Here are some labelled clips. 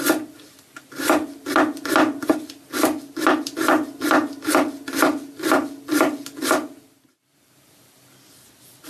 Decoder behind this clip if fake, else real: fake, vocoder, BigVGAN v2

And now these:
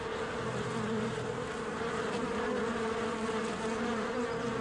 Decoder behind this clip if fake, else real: real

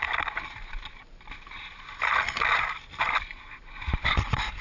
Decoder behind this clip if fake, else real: real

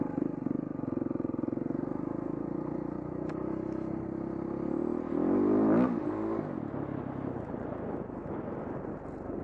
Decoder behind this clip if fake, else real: real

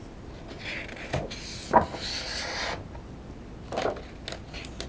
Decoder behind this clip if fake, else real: real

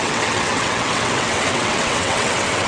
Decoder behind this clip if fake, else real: fake, vocoder, WaveNeXt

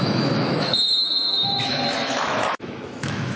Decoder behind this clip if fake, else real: fake, autoencoder, DAC-VAE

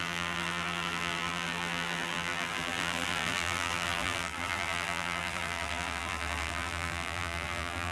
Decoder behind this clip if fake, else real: fake, vocoder, BigVGAN v2